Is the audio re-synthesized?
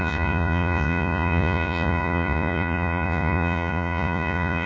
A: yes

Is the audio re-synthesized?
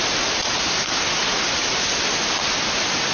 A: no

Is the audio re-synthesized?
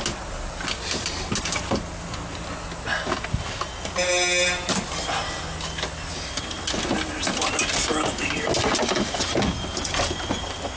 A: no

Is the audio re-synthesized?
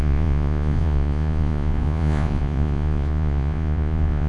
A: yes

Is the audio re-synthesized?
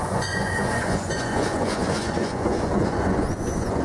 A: yes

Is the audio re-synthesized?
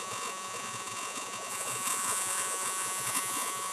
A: yes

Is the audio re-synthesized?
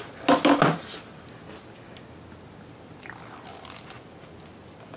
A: no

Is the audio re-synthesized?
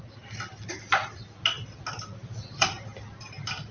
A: no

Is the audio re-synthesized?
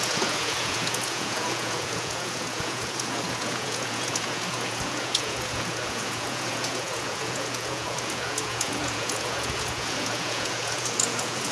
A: yes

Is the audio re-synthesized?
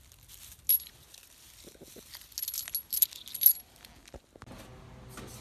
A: no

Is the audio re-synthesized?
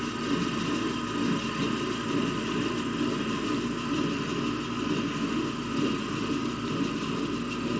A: no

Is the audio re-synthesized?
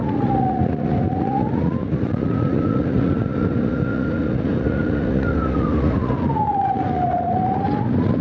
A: yes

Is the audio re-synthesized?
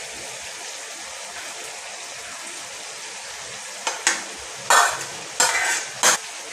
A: no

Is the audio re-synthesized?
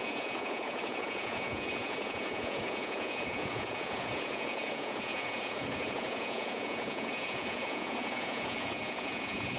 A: yes